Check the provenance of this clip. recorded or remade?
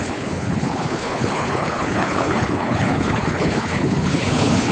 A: remade